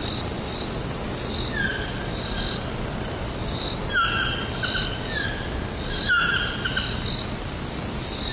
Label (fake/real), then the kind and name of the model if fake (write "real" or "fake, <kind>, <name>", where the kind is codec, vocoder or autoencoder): real